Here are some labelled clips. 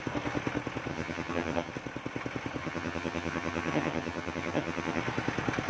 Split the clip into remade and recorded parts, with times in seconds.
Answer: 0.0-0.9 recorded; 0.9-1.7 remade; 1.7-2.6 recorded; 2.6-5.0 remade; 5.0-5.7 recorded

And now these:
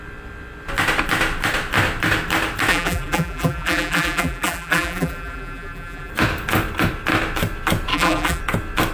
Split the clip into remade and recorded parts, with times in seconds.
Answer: 0.0-2.7 recorded; 2.7-6.1 remade; 6.1-7.9 recorded; 7.9-8.4 remade; 8.4-8.9 recorded

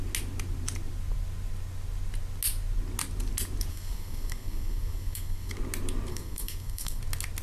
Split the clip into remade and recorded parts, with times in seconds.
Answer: 0.0-3.7 recorded; 3.7-5.5 remade; 5.5-6.1 recorded; 6.1-7.0 remade; 7.0-7.4 recorded

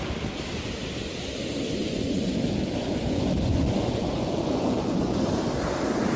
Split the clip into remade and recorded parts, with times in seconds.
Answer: 0.0-1.8 recorded; 1.8-2.4 remade; 2.4-2.8 recorded; 2.8-5.3 remade; 5.3-6.2 recorded

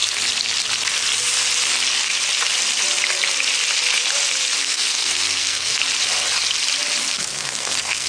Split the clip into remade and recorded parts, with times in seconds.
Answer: 0.0-4.6 recorded; 4.6-5.8 remade; 5.8-7.0 recorded; 7.0-8.1 remade

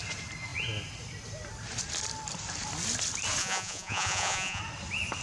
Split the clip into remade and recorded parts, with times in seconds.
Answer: 0.0-3.4 recorded; 3.4-4.6 remade; 4.6-5.2 recorded

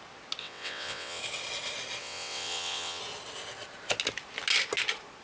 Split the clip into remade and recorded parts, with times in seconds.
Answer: 0.0-0.4 recorded; 0.4-1.2 remade; 1.2-2.0 recorded; 2.0-3.0 remade; 3.0-5.2 recorded

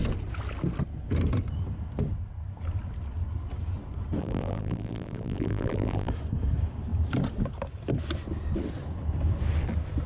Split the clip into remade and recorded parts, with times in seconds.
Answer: 0.0-4.2 recorded; 4.2-6.1 remade; 6.1-10.1 recorded